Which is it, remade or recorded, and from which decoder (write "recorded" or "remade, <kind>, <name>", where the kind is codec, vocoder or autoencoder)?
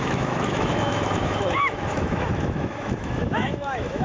remade, autoencoder, DAC-VAE